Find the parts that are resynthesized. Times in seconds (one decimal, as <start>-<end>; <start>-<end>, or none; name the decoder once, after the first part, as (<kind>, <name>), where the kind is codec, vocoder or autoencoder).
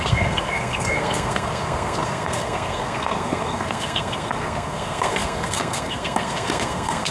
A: 0.0-7.1 (codec, SNAC)